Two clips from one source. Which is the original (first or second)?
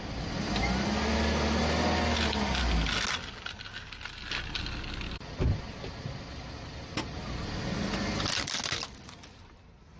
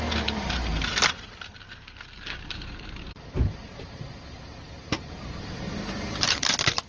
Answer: first